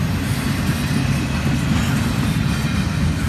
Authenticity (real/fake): real